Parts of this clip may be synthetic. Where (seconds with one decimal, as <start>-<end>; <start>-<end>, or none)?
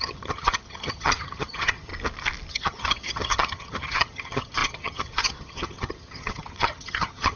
0.0-1.9; 2.5-7.4